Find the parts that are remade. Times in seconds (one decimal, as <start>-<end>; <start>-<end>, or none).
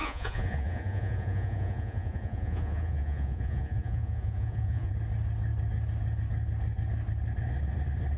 0.0-4.9